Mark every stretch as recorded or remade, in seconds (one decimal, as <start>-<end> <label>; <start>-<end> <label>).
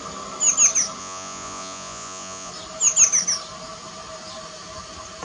0.0-1.0 recorded; 1.0-2.5 remade; 2.5-5.2 recorded